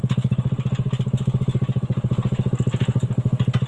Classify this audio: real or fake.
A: real